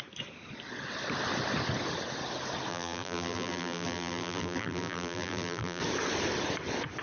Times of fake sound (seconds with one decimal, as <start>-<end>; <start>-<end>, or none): 2.7-5.8